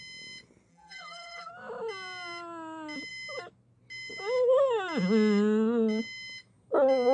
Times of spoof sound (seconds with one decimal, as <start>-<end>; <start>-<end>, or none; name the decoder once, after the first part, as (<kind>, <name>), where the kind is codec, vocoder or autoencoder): 0.7-1.5 (vocoder, BigVGAN v2)